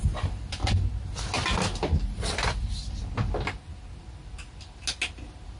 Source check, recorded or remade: recorded